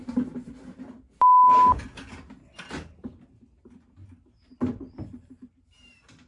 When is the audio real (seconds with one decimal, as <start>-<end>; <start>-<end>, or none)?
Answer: 0.6-4.0